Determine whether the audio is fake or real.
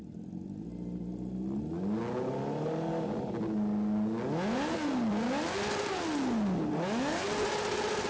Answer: real